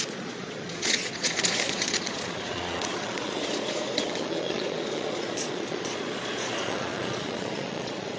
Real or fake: fake